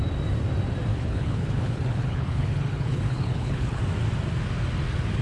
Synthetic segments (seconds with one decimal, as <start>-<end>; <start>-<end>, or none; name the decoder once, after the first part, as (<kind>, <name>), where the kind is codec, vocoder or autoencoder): 0.9-3.8 (codec, HILCodec)